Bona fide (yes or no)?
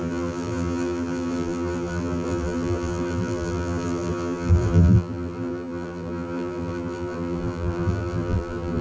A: no